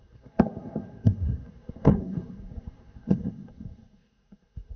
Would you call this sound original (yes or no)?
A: no